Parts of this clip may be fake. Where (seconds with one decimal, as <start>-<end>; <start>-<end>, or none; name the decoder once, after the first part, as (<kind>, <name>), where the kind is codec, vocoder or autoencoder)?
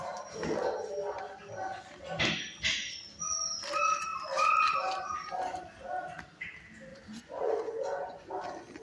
6.9-8.3 (vocoder, Vocos)